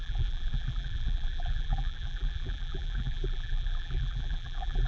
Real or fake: fake